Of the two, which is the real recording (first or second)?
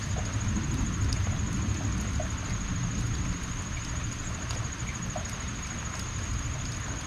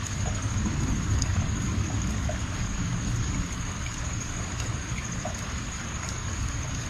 first